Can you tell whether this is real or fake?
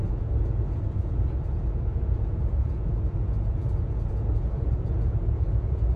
fake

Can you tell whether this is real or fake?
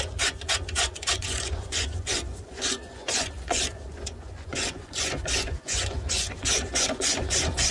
fake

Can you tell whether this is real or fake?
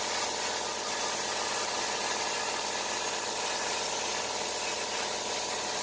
real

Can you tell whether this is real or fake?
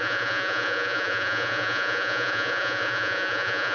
fake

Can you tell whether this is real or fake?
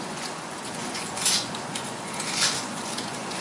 fake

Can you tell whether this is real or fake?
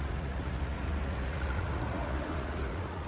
fake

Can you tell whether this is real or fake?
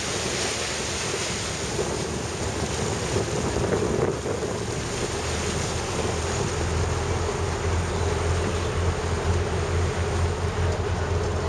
real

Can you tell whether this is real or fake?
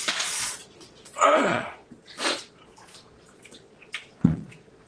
fake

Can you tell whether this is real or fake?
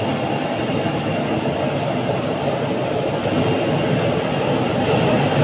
real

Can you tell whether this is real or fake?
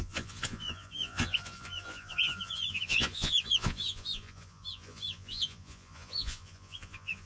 fake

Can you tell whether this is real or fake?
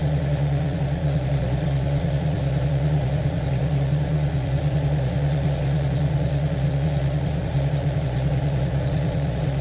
fake